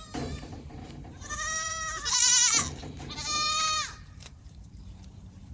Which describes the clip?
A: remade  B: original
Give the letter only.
A